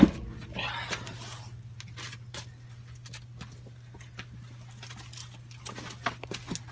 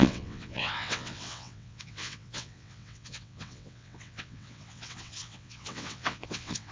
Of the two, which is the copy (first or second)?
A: second